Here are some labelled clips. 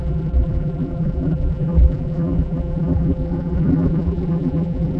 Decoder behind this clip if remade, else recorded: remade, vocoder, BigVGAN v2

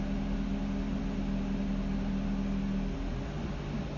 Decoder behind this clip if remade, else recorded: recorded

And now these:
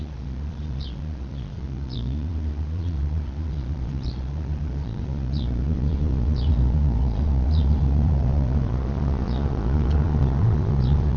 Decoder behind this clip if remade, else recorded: remade, vocoder, Vocos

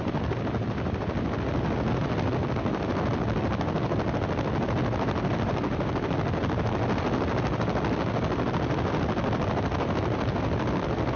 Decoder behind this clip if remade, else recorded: recorded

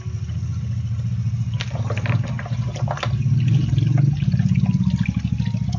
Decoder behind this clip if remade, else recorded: recorded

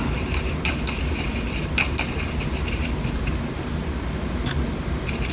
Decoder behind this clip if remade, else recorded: recorded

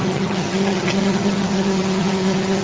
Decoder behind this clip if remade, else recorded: remade, vocoder, HiFi-GAN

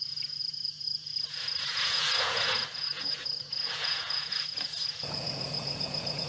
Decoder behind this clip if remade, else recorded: remade, vocoder, Vocos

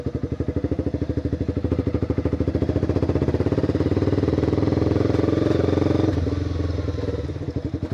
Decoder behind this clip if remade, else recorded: recorded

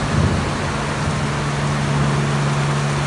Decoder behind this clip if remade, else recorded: recorded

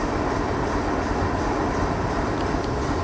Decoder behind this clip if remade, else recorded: recorded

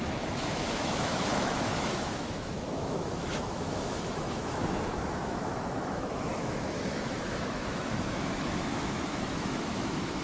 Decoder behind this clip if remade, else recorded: remade, autoencoder, DAC-VAE